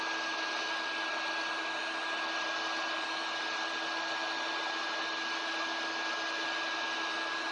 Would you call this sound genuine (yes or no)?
yes